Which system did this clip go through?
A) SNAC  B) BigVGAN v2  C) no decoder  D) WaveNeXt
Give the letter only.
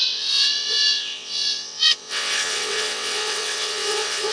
D